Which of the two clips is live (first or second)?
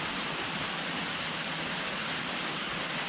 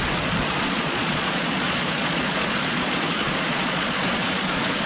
first